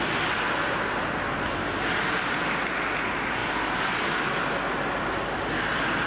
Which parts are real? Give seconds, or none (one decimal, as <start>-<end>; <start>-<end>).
0.0-6.1

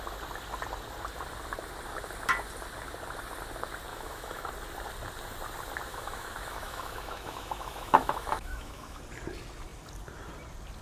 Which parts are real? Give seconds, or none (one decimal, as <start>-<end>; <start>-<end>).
0.0-3.9; 4.5-5.9; 9.0-10.8

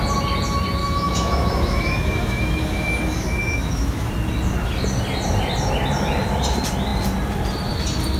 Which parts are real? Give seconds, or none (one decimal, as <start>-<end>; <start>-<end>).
0.0-0.8; 4.1-8.2

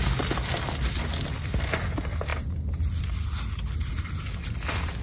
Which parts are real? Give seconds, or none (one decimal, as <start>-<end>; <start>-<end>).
0.0-5.0